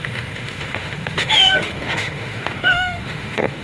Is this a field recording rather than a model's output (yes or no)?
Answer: no